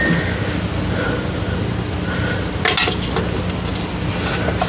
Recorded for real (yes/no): yes